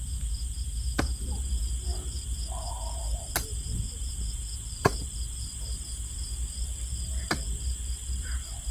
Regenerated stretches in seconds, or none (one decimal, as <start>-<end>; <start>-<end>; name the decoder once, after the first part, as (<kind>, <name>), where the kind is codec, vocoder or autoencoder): none